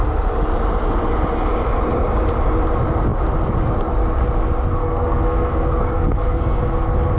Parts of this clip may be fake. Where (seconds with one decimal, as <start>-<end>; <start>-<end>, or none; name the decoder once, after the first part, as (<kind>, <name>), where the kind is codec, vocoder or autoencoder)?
4.8-6.6 (codec, SNAC)